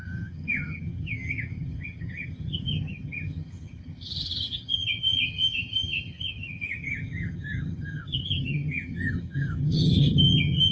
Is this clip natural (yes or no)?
no